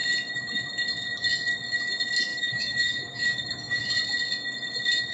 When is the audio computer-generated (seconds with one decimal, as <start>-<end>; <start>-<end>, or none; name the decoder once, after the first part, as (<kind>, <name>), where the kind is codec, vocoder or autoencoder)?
2.3-3.9 (autoencoder, DAC-VAE)